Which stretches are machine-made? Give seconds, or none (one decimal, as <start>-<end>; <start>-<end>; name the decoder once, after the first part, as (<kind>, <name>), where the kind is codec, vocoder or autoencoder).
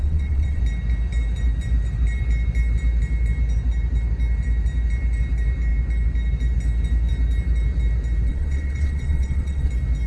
0.0-0.6 (vocoder, WaveNeXt); 8.3-9.7